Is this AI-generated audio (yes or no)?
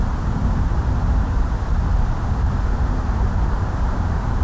yes